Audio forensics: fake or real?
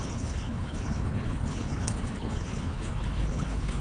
fake